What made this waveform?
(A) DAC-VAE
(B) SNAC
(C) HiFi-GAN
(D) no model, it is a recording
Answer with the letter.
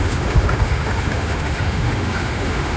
A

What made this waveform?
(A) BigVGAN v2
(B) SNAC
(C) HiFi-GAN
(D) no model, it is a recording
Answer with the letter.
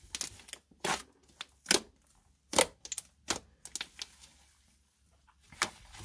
D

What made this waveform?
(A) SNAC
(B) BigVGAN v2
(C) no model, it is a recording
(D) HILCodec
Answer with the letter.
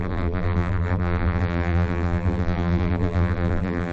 B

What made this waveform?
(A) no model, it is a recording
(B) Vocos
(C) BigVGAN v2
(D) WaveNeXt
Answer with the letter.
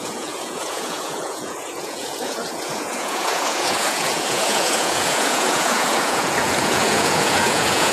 B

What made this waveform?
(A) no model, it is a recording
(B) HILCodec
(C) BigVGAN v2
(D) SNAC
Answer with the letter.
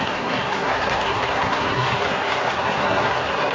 D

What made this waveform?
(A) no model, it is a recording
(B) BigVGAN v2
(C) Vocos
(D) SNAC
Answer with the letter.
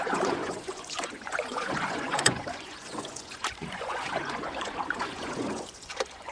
C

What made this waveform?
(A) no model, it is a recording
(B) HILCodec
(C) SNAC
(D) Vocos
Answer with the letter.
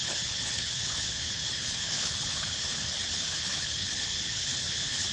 B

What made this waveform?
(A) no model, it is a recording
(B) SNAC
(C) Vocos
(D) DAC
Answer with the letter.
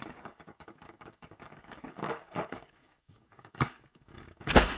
D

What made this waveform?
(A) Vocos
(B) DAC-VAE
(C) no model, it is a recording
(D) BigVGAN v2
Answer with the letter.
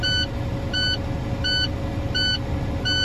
C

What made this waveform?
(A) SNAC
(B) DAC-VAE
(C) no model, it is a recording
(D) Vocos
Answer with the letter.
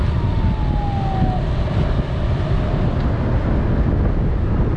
C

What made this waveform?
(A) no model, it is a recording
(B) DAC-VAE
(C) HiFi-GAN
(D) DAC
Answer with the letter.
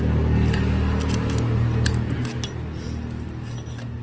A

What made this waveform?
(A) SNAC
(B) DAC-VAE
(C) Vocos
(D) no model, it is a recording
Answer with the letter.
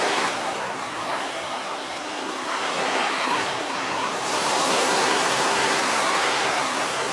A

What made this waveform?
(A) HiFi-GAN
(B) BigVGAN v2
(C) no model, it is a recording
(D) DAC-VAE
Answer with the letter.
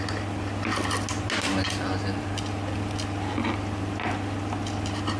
C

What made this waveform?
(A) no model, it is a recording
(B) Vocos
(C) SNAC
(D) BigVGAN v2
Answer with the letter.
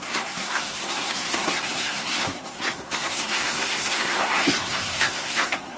C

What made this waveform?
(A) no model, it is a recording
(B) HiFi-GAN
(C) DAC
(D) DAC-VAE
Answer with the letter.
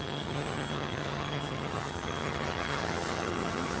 B